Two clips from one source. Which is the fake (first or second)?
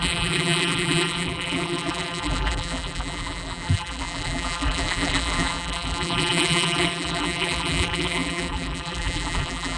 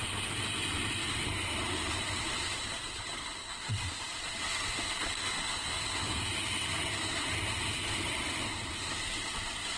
first